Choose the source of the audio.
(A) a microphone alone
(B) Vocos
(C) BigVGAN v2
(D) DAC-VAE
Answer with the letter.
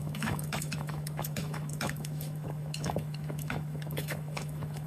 D